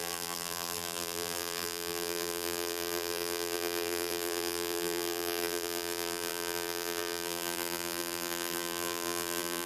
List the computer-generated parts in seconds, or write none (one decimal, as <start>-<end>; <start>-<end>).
0.0-9.7